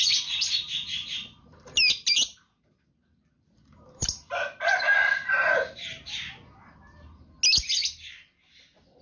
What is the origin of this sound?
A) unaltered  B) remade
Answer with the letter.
A